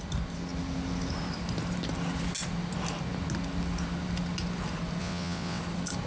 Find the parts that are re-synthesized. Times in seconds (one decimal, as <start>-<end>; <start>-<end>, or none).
5.0-5.6